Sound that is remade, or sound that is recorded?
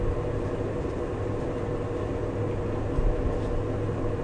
recorded